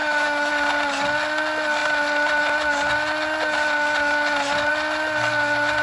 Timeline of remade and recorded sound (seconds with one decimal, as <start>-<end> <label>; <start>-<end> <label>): 0.0-0.5 remade; 0.5-5.8 recorded